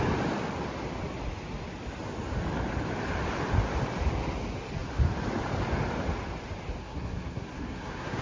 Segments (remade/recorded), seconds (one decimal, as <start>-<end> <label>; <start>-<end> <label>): 0.0-6.8 recorded; 6.8-8.2 remade